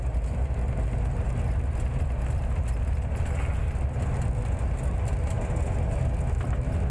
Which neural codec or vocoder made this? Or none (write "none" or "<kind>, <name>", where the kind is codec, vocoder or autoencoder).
none